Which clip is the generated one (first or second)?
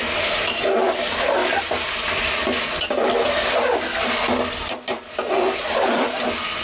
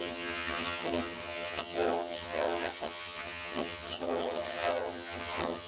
second